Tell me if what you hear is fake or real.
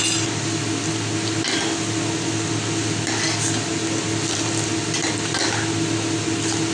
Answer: real